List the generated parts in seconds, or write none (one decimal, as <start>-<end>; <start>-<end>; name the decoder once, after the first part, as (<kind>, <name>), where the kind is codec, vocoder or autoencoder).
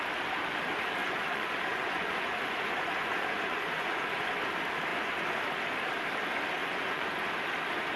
1.0-4.3 (vocoder, Vocos); 4.9-5.4; 6.6-7.3